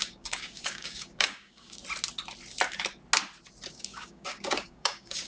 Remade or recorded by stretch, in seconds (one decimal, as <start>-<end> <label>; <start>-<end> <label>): 0.0-1.8 remade; 1.8-3.7 recorded; 3.7-5.3 remade

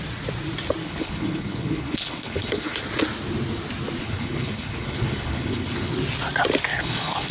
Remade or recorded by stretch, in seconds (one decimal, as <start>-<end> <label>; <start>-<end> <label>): 0.0-0.8 recorded; 0.8-2.8 remade; 2.8-4.0 recorded; 4.0-5.9 remade; 5.9-6.7 recorded; 6.7-7.3 remade

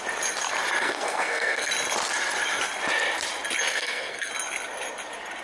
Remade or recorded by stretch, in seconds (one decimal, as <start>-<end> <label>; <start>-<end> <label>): 0.0-0.8 recorded; 0.8-1.7 remade; 1.7-3.7 recorded; 3.7-4.3 remade; 4.3-5.4 recorded

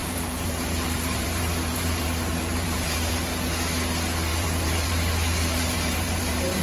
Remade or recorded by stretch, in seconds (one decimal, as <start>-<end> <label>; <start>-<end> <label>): 0.0-3.1 remade; 3.1-4.3 recorded; 4.3-4.9 remade; 4.9-5.5 recorded; 5.5-6.6 remade

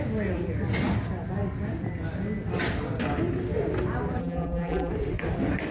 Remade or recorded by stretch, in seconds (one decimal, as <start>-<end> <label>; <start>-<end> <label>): 0.0-4.2 recorded; 4.2-4.9 remade; 4.9-5.7 recorded

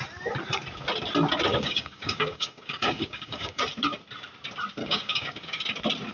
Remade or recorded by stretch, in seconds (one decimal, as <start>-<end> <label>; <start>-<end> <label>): 0.0-1.5 recorded; 1.5-3.6 remade; 3.6-4.8 recorded; 4.8-5.6 remade; 5.6-6.1 recorded

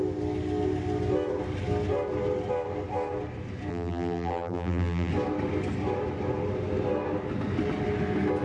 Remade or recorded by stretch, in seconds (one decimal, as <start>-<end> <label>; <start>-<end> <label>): 0.0-3.7 recorded; 3.7-5.1 remade; 5.1-8.4 recorded